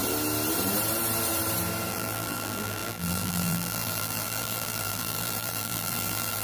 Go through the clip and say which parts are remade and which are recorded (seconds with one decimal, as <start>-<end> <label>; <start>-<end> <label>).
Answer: 0.0-1.9 recorded; 1.9-6.4 remade